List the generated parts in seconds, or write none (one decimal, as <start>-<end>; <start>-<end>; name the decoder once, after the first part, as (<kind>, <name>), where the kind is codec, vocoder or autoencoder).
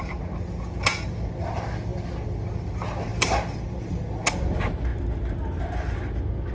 3.1-4.0 (vocoder, BigVGAN v2)